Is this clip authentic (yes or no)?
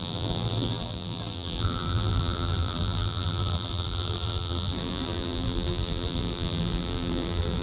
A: no